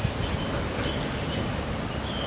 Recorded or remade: recorded